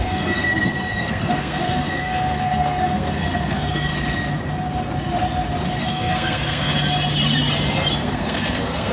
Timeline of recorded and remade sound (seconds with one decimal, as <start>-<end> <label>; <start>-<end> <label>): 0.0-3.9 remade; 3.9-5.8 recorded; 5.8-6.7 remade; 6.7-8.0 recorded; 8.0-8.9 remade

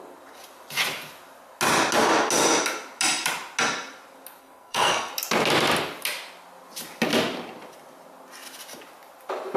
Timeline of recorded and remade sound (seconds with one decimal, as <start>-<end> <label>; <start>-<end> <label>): 0.0-4.4 recorded; 4.4-5.1 remade; 5.1-9.6 recorded

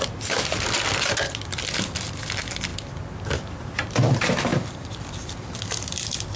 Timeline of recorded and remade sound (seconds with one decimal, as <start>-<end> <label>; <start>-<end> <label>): 0.0-6.4 recorded